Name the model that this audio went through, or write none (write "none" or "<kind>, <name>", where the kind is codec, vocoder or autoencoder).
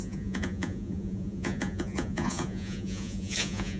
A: vocoder, Vocos